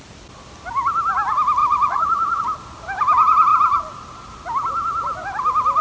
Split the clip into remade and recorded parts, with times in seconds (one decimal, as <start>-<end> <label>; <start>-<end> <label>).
0.0-1.6 recorded; 1.6-2.4 remade; 2.4-5.8 recorded